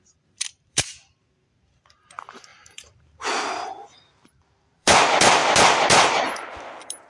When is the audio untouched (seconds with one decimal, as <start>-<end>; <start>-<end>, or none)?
none